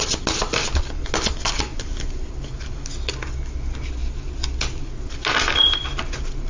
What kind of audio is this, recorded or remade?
recorded